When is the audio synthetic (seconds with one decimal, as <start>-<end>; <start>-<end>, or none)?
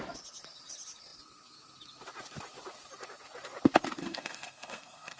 4.0-5.2